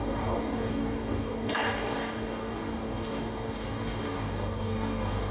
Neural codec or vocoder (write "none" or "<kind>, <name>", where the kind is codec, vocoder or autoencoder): codec, DAC